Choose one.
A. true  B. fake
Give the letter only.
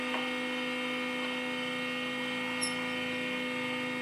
A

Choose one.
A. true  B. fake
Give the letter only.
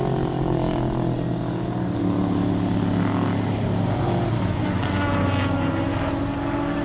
A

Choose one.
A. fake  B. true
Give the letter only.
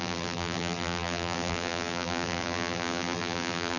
A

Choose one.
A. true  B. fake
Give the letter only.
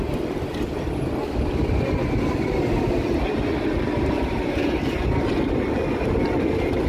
A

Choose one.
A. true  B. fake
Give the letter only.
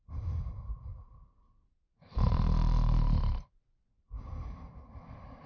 B